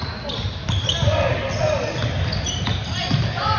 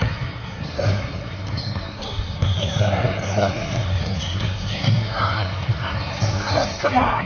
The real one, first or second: first